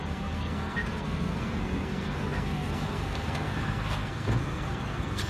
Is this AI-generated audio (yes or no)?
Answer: yes